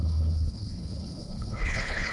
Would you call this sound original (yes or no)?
no